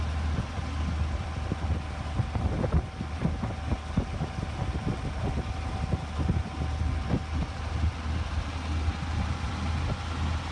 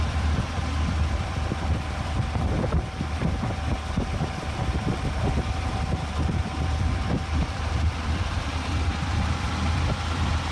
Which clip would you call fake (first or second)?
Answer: second